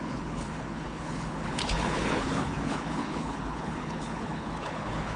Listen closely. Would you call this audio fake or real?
fake